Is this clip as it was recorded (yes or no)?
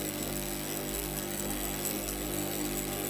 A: no